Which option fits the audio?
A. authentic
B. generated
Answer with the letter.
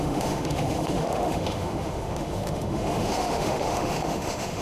B